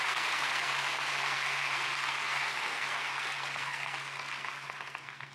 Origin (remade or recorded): remade